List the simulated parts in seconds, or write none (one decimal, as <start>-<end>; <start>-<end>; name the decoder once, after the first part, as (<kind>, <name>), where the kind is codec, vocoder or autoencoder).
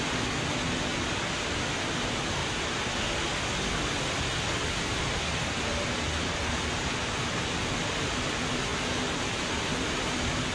none